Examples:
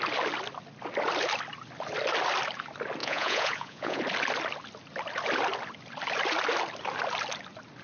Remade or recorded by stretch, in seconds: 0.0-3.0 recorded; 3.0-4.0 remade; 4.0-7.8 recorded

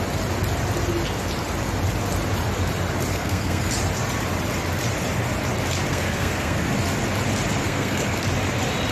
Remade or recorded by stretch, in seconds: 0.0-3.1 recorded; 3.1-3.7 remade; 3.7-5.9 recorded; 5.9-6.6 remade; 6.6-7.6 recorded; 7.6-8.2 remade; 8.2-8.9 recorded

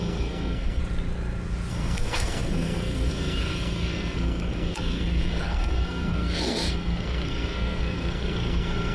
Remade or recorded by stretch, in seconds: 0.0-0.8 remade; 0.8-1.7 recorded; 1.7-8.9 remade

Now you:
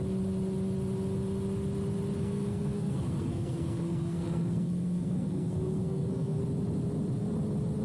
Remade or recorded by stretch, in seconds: 0.0-2.2 recorded; 2.2-6.4 remade; 6.4-7.8 recorded

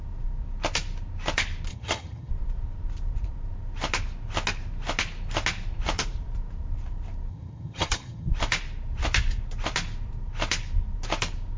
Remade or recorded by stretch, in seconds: 0.0-1.7 recorded; 1.7-2.3 remade; 2.3-7.3 recorded; 7.3-8.3 remade; 8.3-11.6 recorded

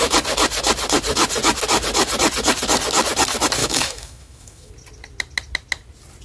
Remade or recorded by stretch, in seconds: 0.0-3.6 recorded; 3.6-4.7 remade; 4.7-6.2 recorded

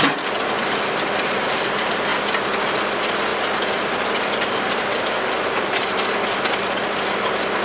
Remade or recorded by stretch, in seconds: 0.0-7.6 recorded

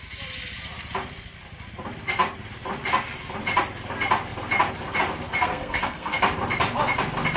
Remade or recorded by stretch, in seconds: 0.0-5.4 recorded; 5.4-6.2 remade; 6.2-7.4 recorded